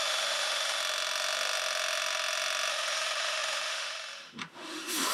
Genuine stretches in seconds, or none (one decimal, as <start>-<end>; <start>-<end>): 0.8-2.7